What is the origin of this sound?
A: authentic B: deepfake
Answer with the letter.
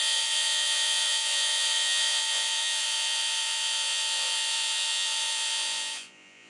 B